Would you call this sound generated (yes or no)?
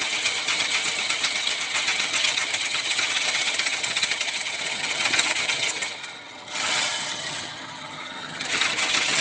yes